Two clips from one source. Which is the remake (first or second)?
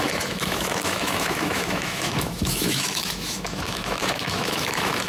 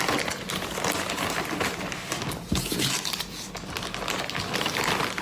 first